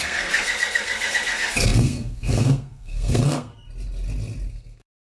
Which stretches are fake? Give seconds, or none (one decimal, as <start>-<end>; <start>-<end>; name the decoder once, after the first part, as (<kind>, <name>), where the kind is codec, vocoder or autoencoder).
0.0-3.5 (codec, SNAC); 4.5-5.0